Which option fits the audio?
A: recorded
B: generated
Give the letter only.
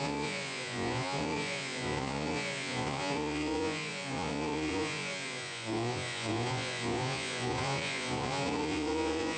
B